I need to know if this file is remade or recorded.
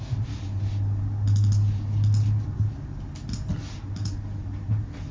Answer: recorded